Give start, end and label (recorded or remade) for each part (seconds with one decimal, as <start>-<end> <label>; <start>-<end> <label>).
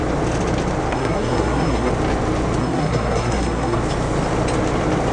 0.0-0.9 recorded; 0.9-1.9 remade; 1.9-2.6 recorded; 2.6-3.8 remade; 3.8-5.1 recorded